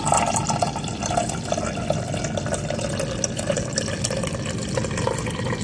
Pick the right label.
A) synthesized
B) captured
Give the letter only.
B